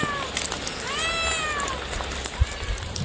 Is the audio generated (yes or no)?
no